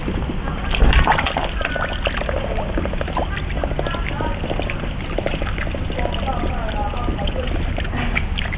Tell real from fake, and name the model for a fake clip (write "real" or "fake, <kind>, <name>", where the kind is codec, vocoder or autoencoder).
real